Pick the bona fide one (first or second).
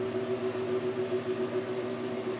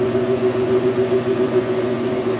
first